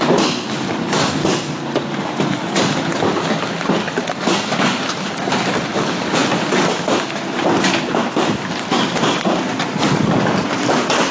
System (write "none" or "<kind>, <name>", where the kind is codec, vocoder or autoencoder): none